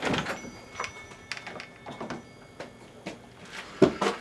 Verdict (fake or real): real